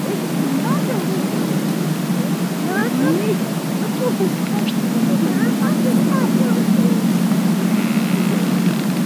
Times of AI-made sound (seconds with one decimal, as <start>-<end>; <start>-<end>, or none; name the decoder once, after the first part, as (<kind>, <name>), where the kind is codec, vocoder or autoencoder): none